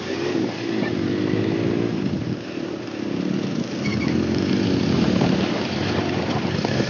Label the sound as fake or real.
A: real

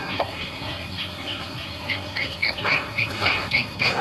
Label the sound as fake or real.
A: fake